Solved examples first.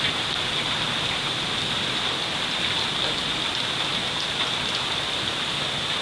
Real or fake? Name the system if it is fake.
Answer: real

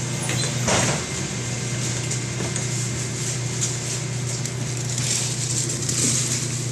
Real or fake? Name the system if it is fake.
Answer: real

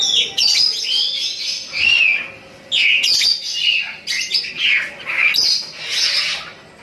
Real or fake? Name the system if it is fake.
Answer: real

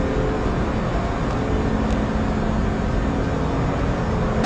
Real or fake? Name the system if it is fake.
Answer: real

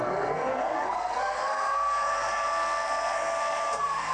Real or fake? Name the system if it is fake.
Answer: fake, codec, SNAC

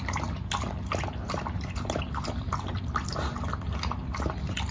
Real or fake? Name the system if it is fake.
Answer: real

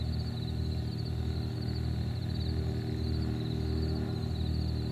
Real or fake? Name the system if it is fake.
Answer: real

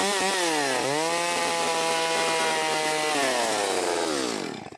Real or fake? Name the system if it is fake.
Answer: real